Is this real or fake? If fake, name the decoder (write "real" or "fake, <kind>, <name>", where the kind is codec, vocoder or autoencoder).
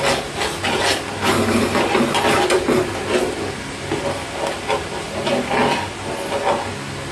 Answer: real